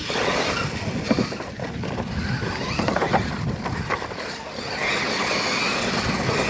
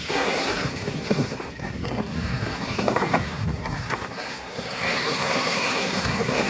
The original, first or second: first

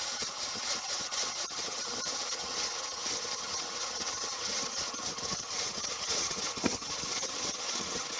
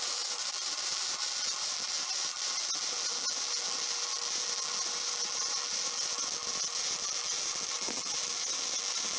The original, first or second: second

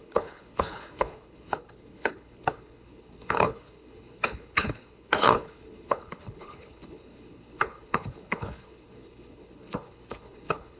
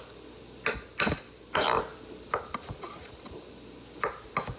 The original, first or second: second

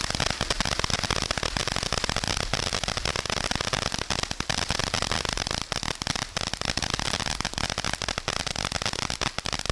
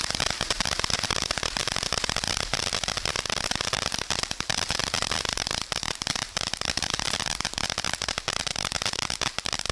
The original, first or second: first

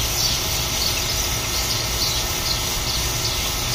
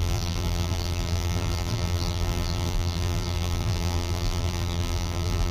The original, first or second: first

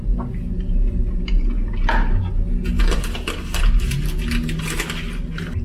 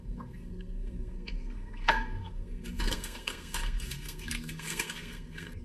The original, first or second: first